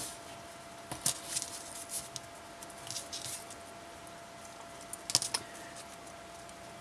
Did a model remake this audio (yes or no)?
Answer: no